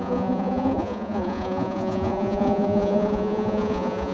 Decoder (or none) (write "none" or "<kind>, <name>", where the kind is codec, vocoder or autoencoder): vocoder, Vocos